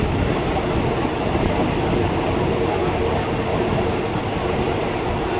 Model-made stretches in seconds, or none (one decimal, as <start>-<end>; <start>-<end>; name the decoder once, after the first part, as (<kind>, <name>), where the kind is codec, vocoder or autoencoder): none